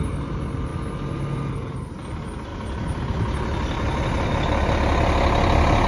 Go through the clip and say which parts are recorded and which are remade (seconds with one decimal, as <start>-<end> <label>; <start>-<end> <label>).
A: 0.0-5.9 recorded